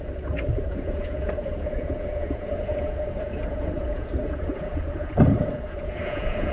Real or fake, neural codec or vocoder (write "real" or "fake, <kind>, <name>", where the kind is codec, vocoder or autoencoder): fake, vocoder, Vocos